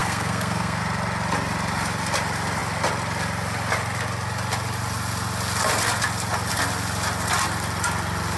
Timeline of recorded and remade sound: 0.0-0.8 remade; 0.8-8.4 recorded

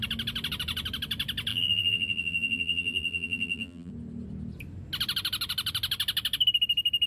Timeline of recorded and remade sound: 0.0-1.5 recorded; 1.5-3.9 remade; 3.9-7.1 recorded

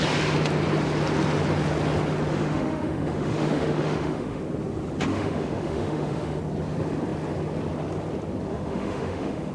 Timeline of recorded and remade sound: 0.0-2.3 recorded; 2.3-4.4 remade; 4.4-5.1 recorded; 5.1-6.4 remade; 6.4-8.5 recorded; 8.5-9.5 remade

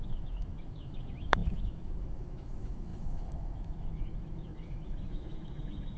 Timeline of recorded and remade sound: 0.0-6.0 remade

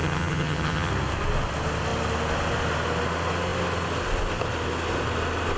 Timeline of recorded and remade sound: 0.0-0.9 remade; 0.9-5.6 recorded

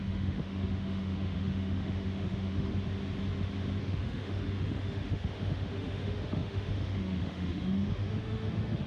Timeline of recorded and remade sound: 0.0-2.7 remade; 2.7-3.8 recorded; 3.8-8.9 remade

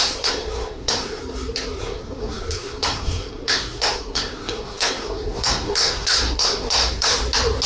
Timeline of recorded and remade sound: 0.0-1.2 remade; 1.2-1.8 recorded; 1.8-7.1 remade; 7.1-7.7 recorded

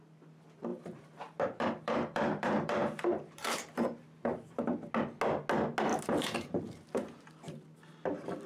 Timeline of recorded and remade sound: 0.0-0.7 recorded; 0.7-4.9 remade; 4.9-5.9 recorded; 5.9-6.6 remade; 6.6-8.5 recorded